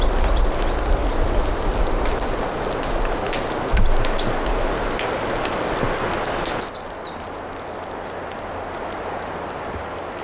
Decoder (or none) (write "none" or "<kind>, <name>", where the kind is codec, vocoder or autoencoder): none